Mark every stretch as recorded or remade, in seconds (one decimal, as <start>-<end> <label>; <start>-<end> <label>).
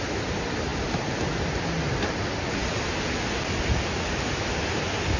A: 0.0-5.2 recorded